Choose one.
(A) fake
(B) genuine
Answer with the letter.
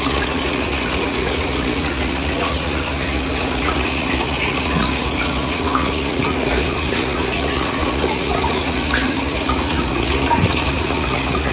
A